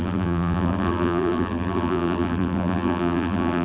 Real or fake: fake